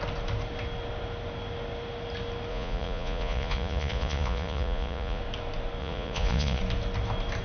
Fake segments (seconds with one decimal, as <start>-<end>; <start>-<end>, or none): 2.5-5.2; 5.8-6.6